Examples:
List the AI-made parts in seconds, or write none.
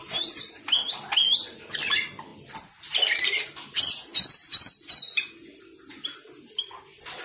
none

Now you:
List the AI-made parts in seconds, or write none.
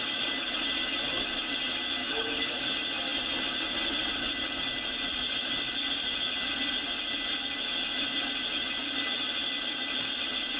2.0-2.6 (autoencoder, DAC-VAE)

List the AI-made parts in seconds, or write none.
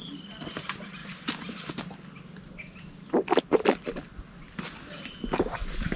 none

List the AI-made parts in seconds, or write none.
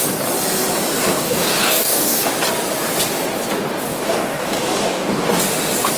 1.1-2.3 (codec, DAC); 3.9-5.4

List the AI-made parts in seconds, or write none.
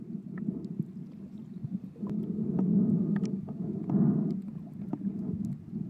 none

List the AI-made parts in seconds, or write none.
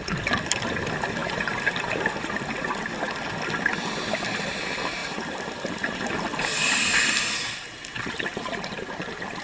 none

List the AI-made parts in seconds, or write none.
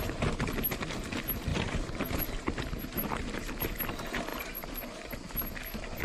none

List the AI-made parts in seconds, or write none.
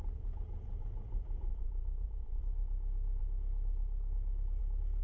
1.5-2.4 (vocoder, Vocos)